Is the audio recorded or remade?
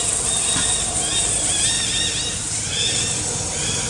recorded